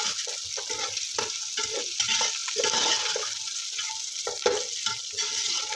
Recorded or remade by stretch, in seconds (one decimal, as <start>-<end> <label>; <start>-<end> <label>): 0.0-5.8 recorded